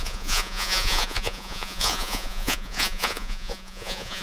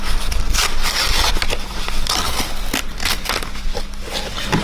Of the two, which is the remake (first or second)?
first